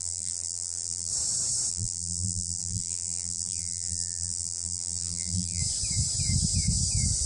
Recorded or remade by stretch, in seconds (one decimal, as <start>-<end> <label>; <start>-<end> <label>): 0.0-1.1 remade; 1.1-1.7 recorded; 1.7-5.6 remade; 5.6-7.3 recorded